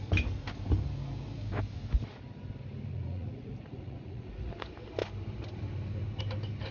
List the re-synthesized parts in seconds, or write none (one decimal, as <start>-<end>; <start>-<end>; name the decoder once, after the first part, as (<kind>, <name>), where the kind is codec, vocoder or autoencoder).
2.9-4.5 (vocoder, Vocos)